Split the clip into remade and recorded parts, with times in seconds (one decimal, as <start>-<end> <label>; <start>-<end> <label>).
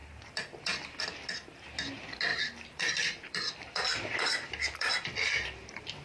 0.0-1.0 remade; 1.0-2.3 recorded; 2.3-6.0 remade